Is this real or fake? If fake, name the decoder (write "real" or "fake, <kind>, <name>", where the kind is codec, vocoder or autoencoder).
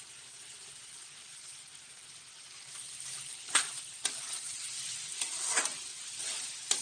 real